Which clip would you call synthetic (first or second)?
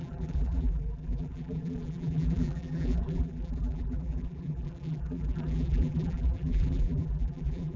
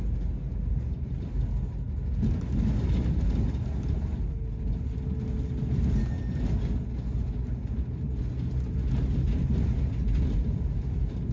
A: first